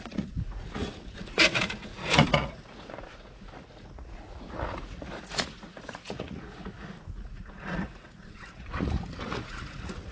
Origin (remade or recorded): remade